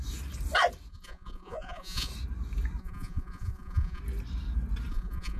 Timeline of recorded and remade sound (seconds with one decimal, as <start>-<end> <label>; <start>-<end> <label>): 0.0-0.9 recorded; 0.9-2.1 remade; 2.1-2.8 recorded; 2.8-4.0 remade; 4.0-4.9 recorded; 4.9-5.4 remade